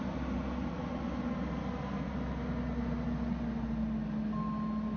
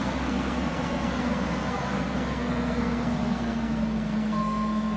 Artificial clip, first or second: second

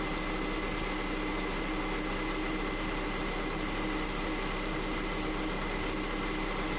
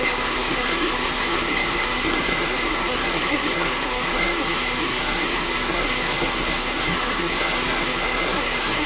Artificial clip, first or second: second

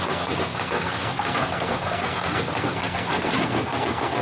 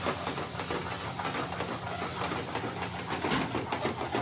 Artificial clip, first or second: first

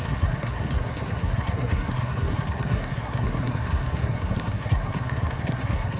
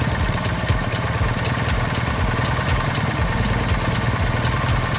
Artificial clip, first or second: first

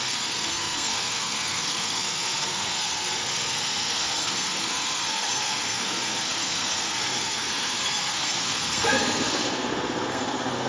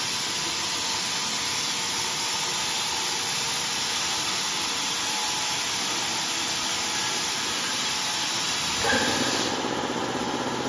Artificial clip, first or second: first